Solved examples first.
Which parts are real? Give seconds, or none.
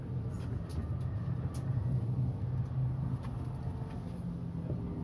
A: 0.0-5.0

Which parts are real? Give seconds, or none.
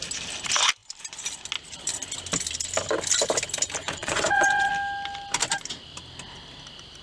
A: 0.0-3.8; 4.7-7.0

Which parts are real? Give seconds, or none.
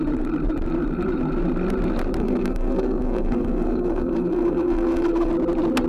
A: 0.0-2.2; 5.3-5.9